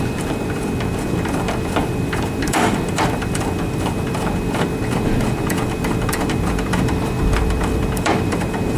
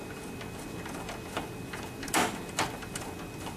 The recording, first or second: second